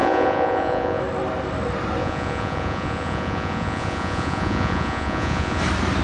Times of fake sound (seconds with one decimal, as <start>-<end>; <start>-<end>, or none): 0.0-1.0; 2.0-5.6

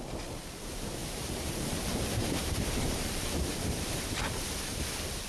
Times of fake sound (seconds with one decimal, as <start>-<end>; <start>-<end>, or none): 1.0-4.2; 4.7-5.3

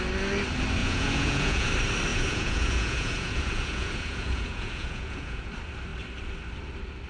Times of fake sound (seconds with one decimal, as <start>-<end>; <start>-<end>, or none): 0.8-1.7; 2.1-5.5